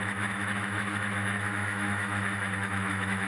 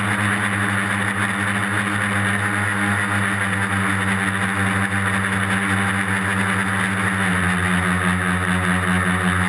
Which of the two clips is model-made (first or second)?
first